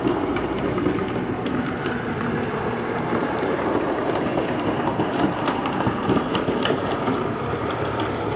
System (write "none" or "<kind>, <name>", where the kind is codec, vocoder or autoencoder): vocoder, BigVGAN v2